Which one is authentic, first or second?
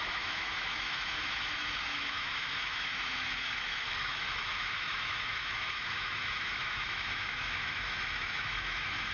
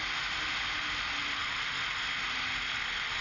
second